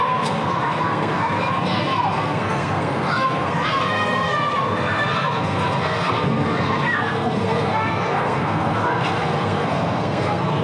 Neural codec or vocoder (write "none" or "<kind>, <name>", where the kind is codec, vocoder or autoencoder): codec, SNAC